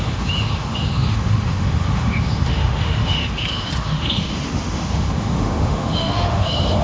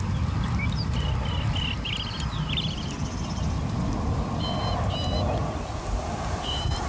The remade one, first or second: first